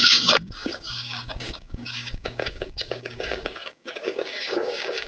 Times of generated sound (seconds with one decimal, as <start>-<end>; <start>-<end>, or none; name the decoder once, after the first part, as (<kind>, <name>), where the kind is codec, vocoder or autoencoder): 0.0-5.1 (codec, DAC)